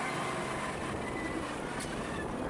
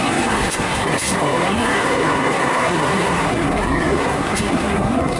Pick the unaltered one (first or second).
first